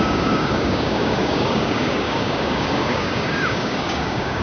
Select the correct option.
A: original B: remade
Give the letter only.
B